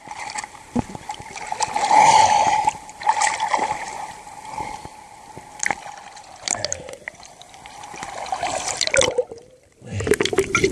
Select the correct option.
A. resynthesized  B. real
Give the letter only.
A